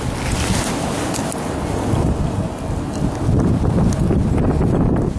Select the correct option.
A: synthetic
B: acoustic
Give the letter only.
B